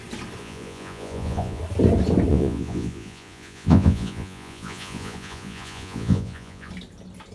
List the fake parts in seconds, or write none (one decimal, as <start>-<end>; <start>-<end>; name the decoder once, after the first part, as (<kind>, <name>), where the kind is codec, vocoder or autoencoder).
0.4-1.6 (vocoder, Vocos); 2.3-6.7